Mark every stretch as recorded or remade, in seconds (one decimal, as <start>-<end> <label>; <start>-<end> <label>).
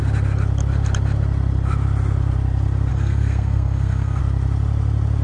0.0-2.9 recorded; 2.9-4.2 remade; 4.2-5.2 recorded